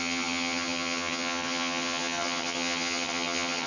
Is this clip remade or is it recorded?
remade